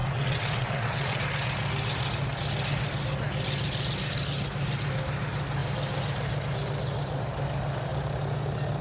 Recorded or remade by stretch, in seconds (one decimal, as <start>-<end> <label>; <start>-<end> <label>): 0.0-1.2 remade; 1.2-8.8 recorded

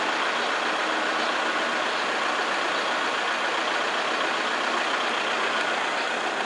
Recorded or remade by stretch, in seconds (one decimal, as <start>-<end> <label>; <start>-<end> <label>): 0.0-6.5 recorded

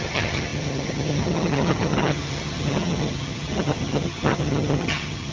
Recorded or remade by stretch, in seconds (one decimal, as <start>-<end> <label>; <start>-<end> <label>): 0.0-5.3 remade

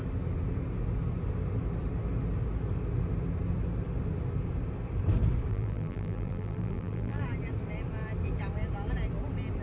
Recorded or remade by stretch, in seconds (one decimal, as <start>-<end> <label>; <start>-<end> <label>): 0.0-5.5 recorded; 5.5-7.2 remade; 7.2-9.6 recorded